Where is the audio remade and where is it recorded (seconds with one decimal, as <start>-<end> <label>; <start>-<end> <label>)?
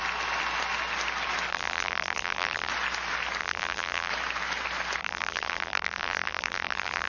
0.0-1.5 recorded; 1.5-2.7 remade; 2.7-3.4 recorded; 3.4-4.1 remade; 4.1-5.0 recorded; 5.0-7.1 remade